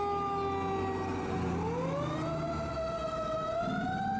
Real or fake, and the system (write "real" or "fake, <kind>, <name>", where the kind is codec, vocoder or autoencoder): real